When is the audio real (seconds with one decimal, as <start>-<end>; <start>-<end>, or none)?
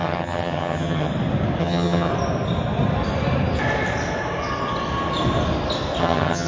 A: 1.1-1.6; 2.1-6.0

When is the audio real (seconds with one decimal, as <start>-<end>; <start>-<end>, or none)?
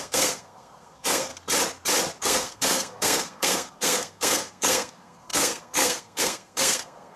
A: 1.3-2.2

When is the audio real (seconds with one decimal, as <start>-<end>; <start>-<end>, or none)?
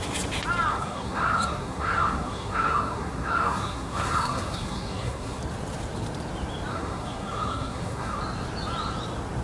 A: 0.0-0.7; 5.4-6.7; 8.2-9.4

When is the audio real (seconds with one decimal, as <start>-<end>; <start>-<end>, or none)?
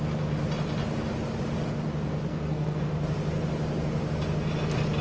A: 0.0-2.3; 2.8-5.0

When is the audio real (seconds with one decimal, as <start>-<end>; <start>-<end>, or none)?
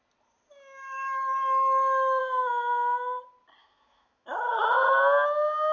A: 0.0-0.8; 2.2-3.6; 4.6-5.7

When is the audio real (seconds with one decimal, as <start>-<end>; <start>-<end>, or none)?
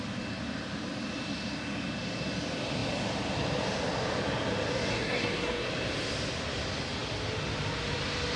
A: 0.0-4.9; 5.7-8.4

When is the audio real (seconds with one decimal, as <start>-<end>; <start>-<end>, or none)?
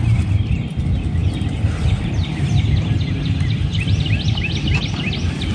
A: 0.0-5.5